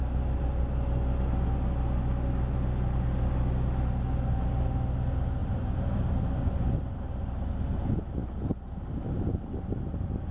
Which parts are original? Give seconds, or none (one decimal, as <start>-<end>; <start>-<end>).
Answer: 0.0-5.4; 6.1-10.3